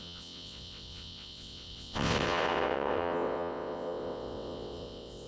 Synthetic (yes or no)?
yes